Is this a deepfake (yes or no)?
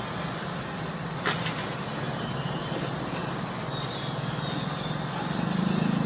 no